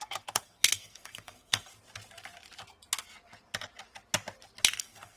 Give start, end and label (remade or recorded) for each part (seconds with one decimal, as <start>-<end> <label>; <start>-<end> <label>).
0.0-1.7 remade; 1.7-4.8 recorded; 4.8-5.2 remade